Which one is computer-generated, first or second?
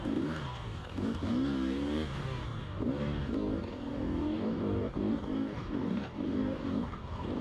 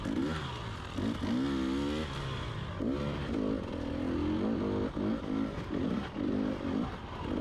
first